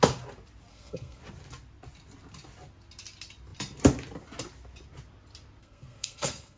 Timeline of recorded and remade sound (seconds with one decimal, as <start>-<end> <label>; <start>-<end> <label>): 0.0-0.7 recorded; 0.7-1.2 remade; 1.2-5.6 recorded; 5.6-6.6 remade